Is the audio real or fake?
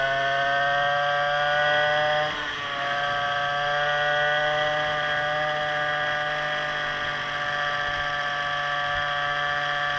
real